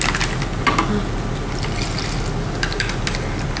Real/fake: real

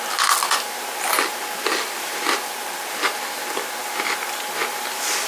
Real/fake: real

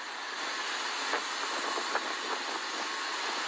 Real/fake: real